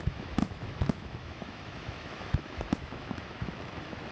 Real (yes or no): no